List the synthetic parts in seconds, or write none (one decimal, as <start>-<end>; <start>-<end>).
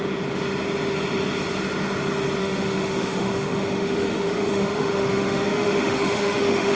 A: 2.4-6.7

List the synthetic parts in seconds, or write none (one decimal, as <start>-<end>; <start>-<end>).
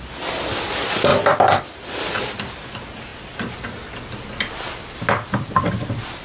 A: none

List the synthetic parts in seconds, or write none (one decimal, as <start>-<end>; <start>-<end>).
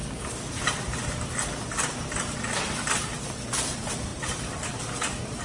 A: 3.2-4.1; 4.8-5.4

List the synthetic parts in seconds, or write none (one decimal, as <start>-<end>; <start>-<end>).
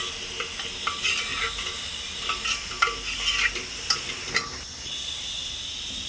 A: none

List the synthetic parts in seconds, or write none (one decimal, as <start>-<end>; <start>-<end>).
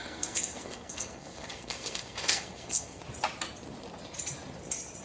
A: 0.0-3.0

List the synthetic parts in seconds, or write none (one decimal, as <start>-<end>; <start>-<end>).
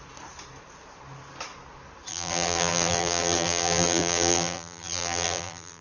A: 2.1-5.8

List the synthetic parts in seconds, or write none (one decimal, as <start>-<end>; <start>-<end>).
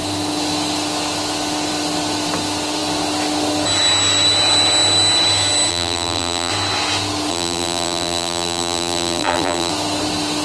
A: 5.7-6.5; 7.3-9.7